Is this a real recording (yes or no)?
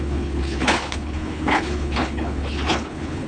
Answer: no